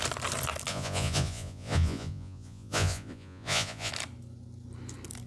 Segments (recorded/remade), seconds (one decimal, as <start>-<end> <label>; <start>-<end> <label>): 0.0-0.7 recorded; 0.7-3.9 remade; 3.9-5.3 recorded